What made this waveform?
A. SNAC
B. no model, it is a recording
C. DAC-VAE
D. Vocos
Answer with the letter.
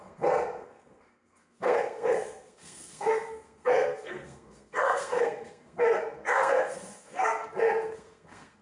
A